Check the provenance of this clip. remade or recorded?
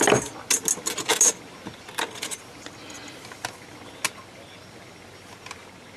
recorded